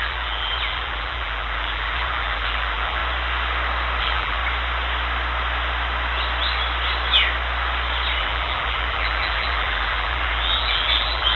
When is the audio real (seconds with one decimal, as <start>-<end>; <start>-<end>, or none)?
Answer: 3.0-4.0; 4.4-8.2